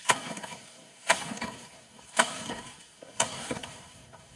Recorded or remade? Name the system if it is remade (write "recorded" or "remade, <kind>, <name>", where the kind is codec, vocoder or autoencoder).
remade, codec, SNAC